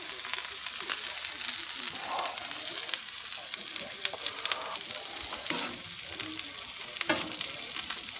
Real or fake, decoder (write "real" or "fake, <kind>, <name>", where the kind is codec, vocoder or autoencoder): real